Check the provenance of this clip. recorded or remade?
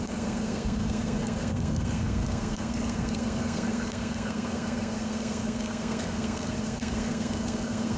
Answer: remade